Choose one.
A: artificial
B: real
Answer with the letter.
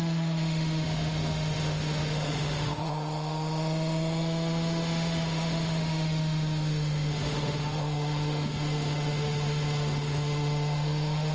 A